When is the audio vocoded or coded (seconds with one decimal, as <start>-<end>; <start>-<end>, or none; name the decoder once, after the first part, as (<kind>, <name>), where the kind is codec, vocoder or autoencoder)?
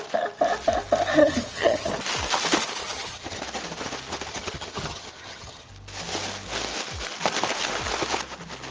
1.2-1.9 (vocoder, HiFi-GAN); 2.8-3.4; 4.3-5.7